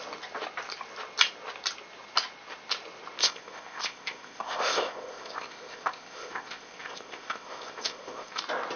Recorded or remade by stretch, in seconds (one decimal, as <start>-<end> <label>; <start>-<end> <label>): 0.0-3.2 recorded; 3.2-8.4 remade; 8.4-8.8 recorded